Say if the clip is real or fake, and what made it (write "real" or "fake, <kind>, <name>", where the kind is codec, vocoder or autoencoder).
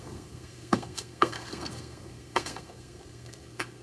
fake, codec, SNAC